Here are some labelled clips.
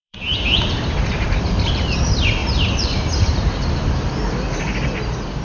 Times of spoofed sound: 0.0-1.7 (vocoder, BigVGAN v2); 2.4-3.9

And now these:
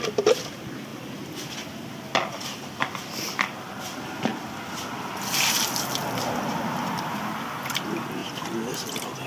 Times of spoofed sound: none

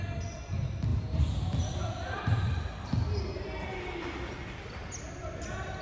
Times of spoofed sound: 0.9-2.2 (vocoder, BigVGAN v2)

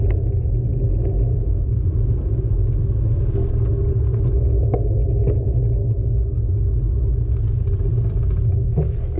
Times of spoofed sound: 0.7-2.8 (vocoder, BigVGAN v2)